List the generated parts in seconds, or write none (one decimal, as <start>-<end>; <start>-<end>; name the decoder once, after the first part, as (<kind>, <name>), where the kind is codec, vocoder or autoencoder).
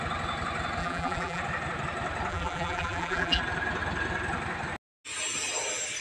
0.8-1.4 (vocoder, BigVGAN v2); 2.3-3.4